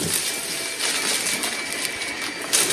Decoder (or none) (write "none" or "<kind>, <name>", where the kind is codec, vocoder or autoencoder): none